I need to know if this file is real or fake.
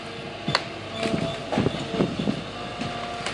real